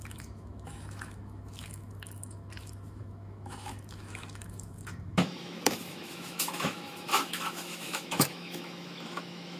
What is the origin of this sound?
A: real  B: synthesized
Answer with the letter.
B